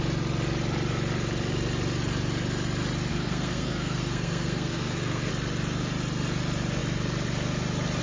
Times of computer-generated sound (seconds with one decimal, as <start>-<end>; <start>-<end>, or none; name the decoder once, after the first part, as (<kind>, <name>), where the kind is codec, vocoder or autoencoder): 3.1-5.3 (codec, SNAC)